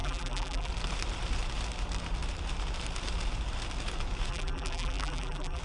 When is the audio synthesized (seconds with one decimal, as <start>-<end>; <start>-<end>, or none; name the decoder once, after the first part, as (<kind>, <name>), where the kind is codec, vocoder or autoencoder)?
0.0-0.7 (vocoder, BigVGAN v2); 4.3-5.6